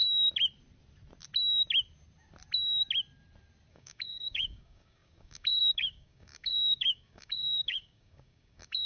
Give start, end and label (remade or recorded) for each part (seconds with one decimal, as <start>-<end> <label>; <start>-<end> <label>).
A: 0.0-3.7 recorded; 3.7-8.9 remade